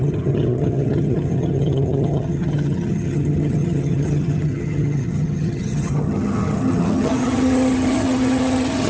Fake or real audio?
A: fake